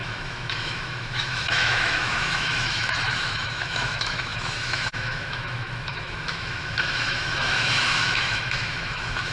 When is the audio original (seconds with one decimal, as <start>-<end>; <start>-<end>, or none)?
none